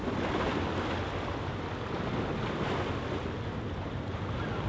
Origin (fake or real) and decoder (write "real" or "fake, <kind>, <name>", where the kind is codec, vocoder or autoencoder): real